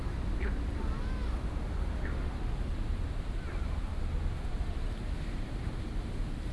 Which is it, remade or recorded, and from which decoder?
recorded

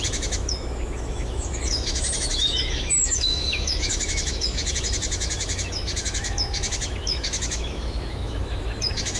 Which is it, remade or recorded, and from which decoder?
remade, autoencoder, DAC-VAE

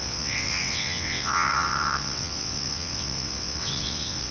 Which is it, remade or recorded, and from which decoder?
remade, vocoder, WaveNeXt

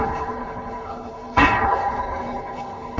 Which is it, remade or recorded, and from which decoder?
remade, codec, HILCodec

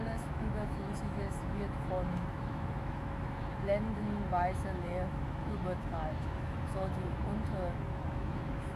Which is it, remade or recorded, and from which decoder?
remade, autoencoder, DAC-VAE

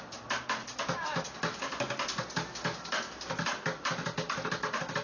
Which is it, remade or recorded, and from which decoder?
recorded